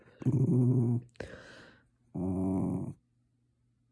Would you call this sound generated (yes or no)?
no